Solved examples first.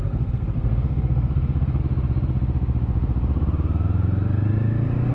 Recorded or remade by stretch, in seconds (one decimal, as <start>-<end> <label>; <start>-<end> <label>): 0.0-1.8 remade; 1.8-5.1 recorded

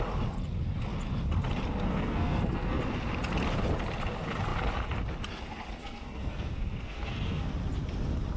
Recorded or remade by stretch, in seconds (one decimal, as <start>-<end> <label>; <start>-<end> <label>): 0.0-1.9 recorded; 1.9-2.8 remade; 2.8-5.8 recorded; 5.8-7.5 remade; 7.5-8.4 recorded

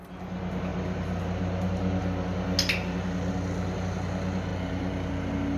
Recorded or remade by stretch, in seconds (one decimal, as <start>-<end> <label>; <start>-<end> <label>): 0.0-0.7 recorded; 0.7-1.2 remade; 1.2-5.6 recorded